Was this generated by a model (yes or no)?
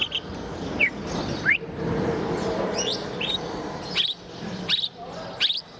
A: no